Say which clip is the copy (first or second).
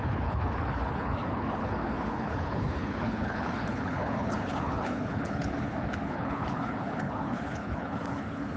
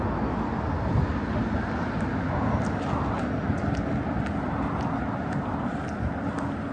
first